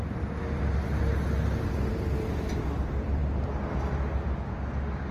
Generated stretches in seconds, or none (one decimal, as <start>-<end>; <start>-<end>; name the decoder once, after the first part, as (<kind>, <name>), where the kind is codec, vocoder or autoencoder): none